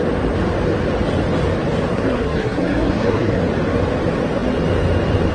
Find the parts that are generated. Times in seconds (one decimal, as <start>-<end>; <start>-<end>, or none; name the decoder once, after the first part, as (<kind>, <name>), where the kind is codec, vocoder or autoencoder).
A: 1.9-3.4 (codec, SNAC)